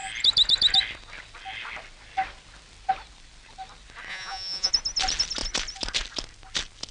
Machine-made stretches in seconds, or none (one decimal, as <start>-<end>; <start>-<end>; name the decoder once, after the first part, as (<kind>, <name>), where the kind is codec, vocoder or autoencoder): 4.1-4.7 (vocoder, Vocos)